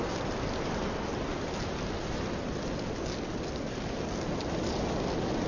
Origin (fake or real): real